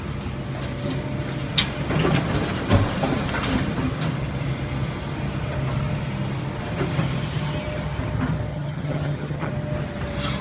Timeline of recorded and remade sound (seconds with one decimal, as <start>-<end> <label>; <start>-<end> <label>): 0.0-8.5 recorded; 8.5-9.5 remade; 9.5-10.4 recorded